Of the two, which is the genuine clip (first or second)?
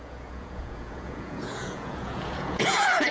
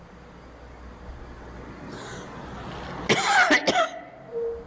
second